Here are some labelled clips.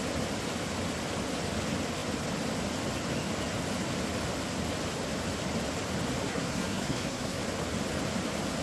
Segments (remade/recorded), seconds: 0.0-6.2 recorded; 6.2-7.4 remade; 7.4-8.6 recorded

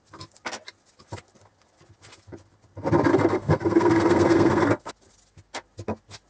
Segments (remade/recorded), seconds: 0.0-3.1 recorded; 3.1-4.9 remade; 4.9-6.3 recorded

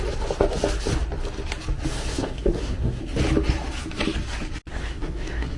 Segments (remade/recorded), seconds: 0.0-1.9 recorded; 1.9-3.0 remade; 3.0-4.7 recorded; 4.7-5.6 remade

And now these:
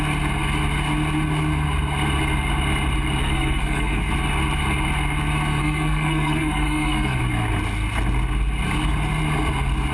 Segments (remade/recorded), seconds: 0.0-3.2 recorded; 3.2-4.1 remade; 4.1-5.6 recorded; 5.6-7.2 remade; 7.2-9.9 recorded

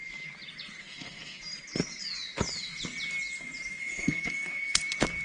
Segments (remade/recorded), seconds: 0.0-0.8 recorded; 0.8-1.4 remade; 1.4-3.8 recorded; 3.8-4.8 remade; 4.8-5.2 recorded

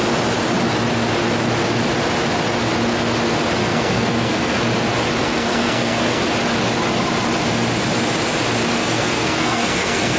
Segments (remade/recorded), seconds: 0.0-3.6 recorded; 3.6-4.6 remade; 4.6-5.2 recorded; 5.2-6.2 remade; 6.2-8.8 recorded; 8.8-10.2 remade